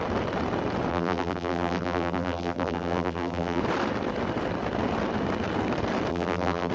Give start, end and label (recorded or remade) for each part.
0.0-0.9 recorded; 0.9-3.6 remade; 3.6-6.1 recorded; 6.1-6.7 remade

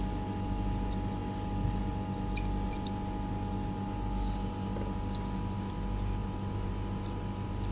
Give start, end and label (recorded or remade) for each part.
0.0-7.7 recorded